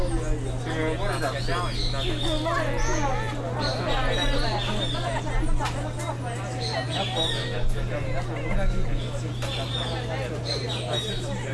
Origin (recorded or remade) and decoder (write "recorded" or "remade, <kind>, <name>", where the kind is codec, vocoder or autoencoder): recorded